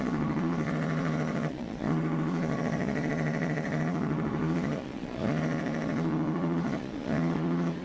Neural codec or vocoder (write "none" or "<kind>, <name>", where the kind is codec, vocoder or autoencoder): vocoder, Vocos